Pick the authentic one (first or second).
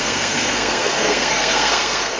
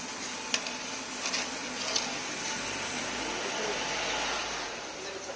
second